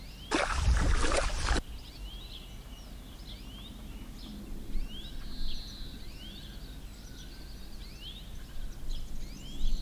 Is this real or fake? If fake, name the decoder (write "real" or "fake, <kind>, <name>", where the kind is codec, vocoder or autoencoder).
real